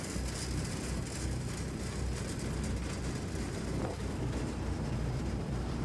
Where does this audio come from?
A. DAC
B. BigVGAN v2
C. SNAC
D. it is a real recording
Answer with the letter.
D